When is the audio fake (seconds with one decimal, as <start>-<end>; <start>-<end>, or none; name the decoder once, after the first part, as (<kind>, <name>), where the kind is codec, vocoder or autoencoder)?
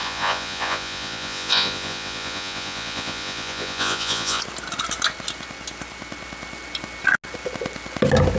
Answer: 0.0-4.4 (vocoder, Vocos)